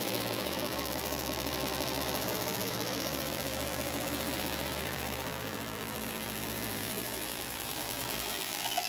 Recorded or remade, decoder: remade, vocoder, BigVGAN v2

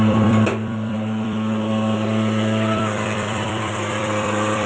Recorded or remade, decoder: remade, vocoder, BigVGAN v2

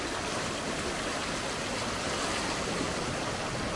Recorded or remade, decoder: recorded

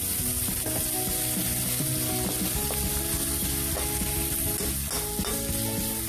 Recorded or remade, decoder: recorded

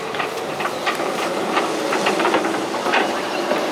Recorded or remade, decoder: remade, vocoder, BigVGAN v2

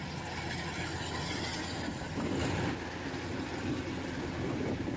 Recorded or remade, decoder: recorded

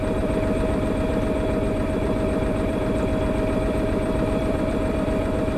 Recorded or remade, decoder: remade, vocoder, BigVGAN v2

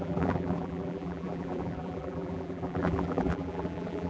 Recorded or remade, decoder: remade, vocoder, BigVGAN v2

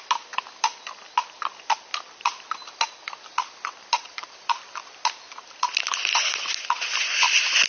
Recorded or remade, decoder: remade, vocoder, BigVGAN v2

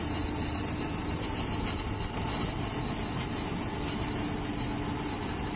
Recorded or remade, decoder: recorded